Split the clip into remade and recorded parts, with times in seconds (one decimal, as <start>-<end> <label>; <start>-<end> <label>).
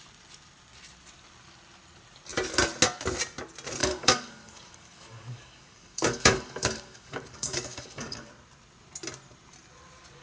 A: 0.0-3.8 recorded; 3.8-8.3 remade; 8.3-10.2 recorded